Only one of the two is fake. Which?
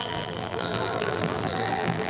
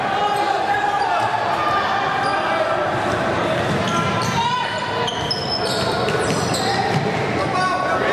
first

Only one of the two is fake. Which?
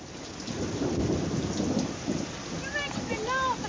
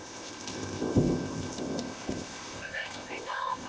second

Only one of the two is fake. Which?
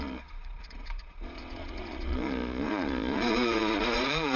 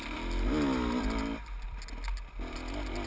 first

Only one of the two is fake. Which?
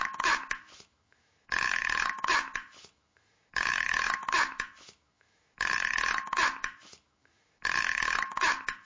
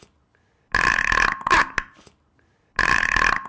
first